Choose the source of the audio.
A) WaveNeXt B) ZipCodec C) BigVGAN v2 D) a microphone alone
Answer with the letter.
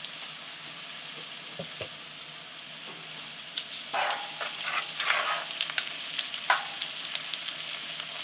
D